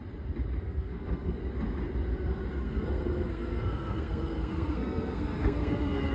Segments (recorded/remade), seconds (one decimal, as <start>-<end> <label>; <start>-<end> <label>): 0.0-0.6 recorded; 0.6-1.4 remade; 1.4-2.6 recorded; 2.6-6.1 remade